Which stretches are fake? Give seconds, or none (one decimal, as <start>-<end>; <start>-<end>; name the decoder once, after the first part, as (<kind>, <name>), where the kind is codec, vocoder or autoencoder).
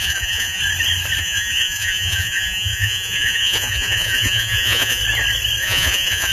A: 0.0-0.6 (vocoder, Vocos); 1.2-5.0; 5.6-6.3